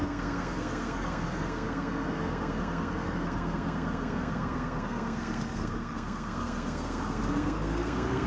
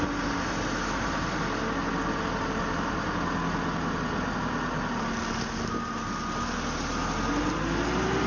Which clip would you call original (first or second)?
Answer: second